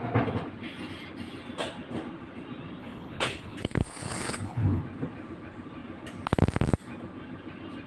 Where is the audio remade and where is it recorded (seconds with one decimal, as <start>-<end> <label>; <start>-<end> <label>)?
0.0-2.8 recorded; 2.8-4.8 remade; 4.8-7.9 recorded